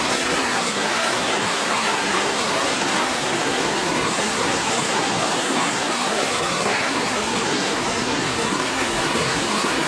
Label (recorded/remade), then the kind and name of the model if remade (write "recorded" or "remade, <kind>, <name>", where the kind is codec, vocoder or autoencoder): remade, codec, SNAC